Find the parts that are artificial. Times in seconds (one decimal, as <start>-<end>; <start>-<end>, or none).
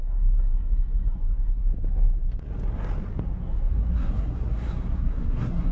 0.0-1.7; 3.2-5.7